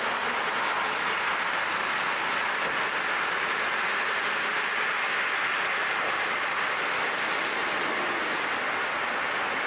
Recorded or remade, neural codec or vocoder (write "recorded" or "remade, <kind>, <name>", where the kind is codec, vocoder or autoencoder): recorded